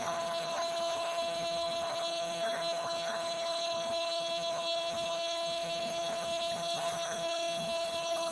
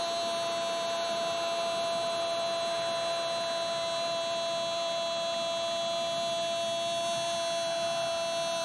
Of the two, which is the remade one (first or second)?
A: first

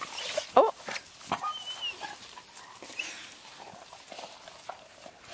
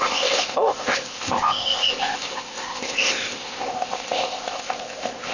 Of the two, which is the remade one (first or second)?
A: second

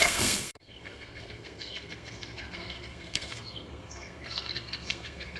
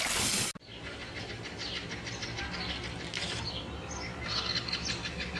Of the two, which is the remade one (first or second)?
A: first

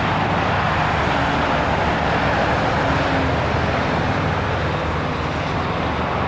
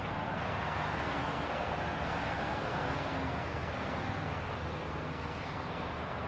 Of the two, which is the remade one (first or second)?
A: second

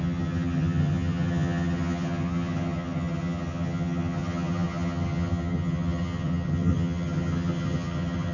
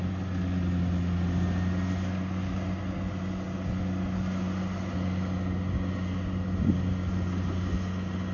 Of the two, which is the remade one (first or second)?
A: first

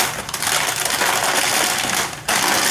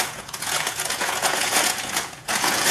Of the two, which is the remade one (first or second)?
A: second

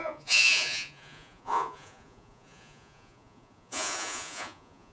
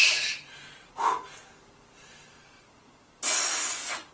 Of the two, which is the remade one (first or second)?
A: first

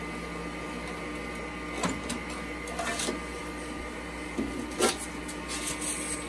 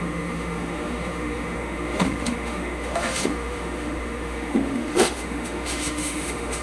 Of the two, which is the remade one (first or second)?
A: second